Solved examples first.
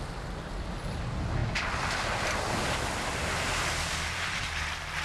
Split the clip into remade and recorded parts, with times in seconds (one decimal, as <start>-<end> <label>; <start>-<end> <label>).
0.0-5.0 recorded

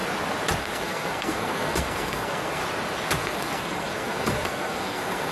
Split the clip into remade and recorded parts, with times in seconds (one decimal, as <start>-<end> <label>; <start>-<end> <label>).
0.0-0.6 recorded; 0.6-2.6 remade; 2.6-3.2 recorded; 3.2-5.3 remade

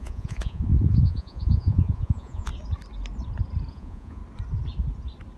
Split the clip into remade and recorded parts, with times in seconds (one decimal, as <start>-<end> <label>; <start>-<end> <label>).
0.0-2.5 remade; 2.5-3.7 recorded; 3.7-4.2 remade; 4.2-5.4 recorded